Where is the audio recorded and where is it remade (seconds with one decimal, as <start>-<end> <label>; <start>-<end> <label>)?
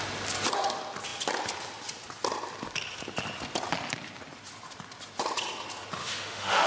0.0-6.0 recorded; 6.0-6.7 remade